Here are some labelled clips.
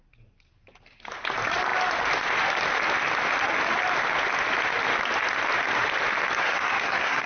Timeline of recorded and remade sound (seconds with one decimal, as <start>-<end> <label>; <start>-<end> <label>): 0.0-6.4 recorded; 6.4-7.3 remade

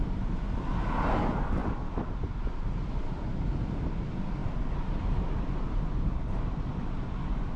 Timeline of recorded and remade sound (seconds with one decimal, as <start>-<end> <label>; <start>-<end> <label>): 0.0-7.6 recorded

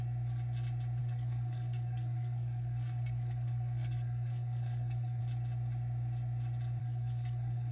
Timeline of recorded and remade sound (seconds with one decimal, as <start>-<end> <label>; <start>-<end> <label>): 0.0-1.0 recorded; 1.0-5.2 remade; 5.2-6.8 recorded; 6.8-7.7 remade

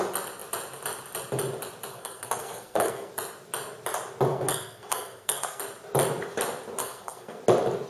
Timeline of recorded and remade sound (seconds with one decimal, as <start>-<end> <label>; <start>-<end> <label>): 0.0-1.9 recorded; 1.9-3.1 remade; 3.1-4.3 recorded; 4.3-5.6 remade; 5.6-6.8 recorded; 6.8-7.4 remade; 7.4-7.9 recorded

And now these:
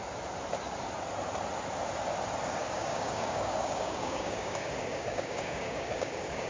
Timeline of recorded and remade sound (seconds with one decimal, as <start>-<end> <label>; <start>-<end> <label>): 0.0-2.6 recorded; 2.6-6.5 remade